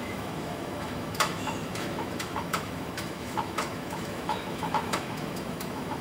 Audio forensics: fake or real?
fake